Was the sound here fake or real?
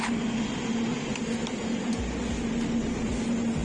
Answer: real